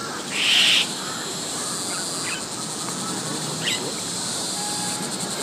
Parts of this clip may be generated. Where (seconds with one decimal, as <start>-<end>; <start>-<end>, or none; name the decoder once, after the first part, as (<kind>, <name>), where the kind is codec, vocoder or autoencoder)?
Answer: 0.0-1.7 (vocoder, BigVGAN v2); 3.3-5.4

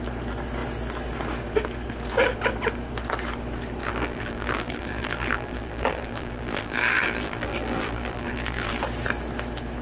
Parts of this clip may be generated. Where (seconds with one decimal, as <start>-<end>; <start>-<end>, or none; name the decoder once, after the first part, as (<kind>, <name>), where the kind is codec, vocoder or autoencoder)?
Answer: 3.8-8.8 (vocoder, BigVGAN v2)

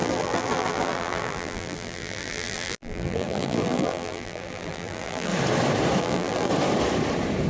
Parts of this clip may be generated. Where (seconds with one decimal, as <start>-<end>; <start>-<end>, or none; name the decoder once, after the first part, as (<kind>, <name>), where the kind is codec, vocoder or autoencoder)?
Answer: 0.0-5.3 (vocoder, BigVGAN v2); 6.0-6.5

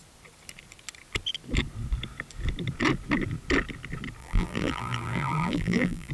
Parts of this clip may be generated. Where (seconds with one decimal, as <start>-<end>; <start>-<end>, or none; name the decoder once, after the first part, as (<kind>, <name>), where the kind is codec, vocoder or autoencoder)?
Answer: 4.2-6.1 (vocoder, BigVGAN v2)

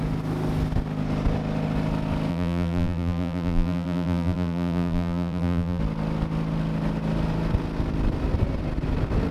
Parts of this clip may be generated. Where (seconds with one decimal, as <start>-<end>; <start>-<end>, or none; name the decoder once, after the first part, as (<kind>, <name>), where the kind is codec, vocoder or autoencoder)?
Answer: 2.3-5.8 (vocoder, BigVGAN v2)

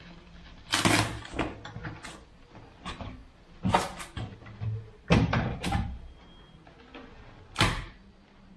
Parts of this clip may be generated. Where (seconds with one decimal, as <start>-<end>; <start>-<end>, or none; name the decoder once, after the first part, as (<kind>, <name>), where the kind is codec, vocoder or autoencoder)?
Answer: none

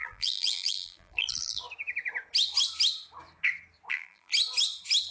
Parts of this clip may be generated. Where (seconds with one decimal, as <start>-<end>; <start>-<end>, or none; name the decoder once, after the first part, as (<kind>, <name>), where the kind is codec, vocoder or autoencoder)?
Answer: 0.0-1.6 (vocoder, BigVGAN v2); 3.9-4.3